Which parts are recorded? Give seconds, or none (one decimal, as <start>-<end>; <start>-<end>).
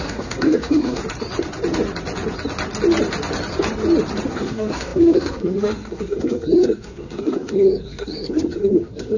1.0-4.3